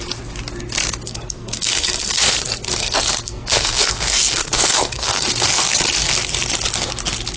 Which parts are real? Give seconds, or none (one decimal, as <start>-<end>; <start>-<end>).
0.0-1.1; 5.5-7.4